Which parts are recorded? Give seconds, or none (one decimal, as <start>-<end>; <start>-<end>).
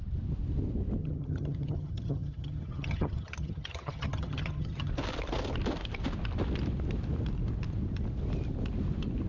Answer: 0.0-1.0; 4.9-9.3